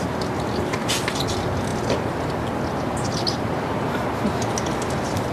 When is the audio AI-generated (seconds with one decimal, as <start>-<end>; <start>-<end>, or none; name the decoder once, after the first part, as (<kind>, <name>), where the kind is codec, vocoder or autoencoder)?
none